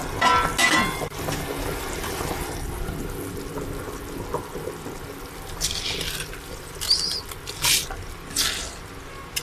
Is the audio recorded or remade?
recorded